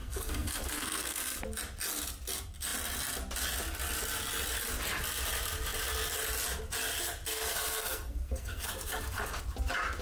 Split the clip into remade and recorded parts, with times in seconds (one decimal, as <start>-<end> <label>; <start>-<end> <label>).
0.0-1.4 remade; 1.4-7.3 recorded; 7.3-9.4 remade; 9.4-10.0 recorded